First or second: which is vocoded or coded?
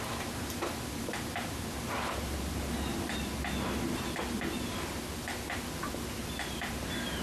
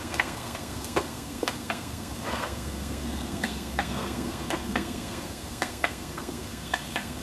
second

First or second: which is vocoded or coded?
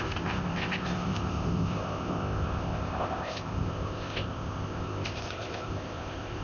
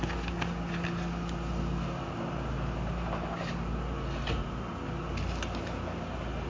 first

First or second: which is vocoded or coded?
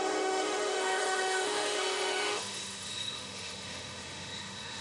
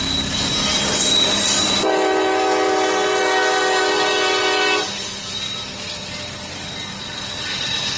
first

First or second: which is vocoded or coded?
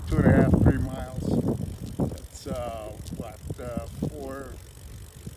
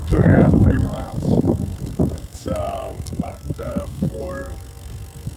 second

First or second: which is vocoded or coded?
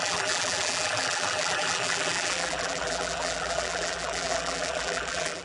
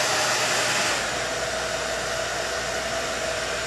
first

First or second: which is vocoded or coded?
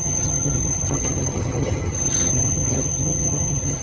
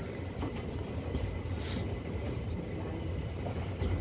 first